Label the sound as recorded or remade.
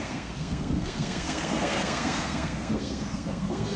remade